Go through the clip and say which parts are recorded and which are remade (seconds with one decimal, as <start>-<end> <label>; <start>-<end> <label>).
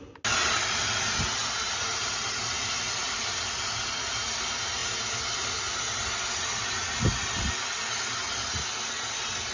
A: 0.0-9.5 recorded